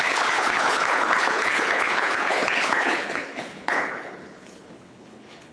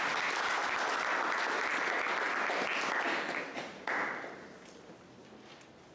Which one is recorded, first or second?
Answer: second